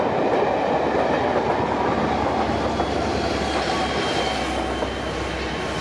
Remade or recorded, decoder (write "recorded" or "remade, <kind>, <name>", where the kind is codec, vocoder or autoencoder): recorded